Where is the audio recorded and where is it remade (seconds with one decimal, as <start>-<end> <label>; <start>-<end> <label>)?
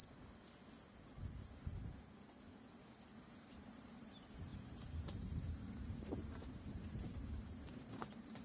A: 0.0-3.2 recorded; 3.2-8.4 remade